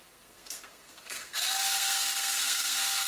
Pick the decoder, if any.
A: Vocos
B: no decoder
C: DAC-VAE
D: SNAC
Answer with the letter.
D